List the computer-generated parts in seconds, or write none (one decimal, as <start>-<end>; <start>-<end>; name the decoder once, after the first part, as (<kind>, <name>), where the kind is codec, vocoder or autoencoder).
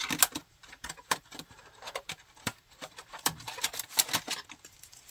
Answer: 0.4-3.5 (vocoder, BigVGAN v2)